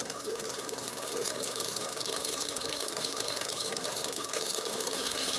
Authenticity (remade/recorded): remade